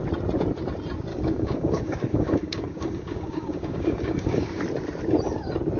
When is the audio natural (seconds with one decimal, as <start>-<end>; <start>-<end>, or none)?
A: 0.0-1.1; 4.6-5.8